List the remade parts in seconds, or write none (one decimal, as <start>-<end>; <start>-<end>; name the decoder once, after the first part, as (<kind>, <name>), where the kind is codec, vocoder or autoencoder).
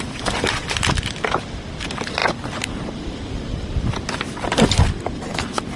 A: none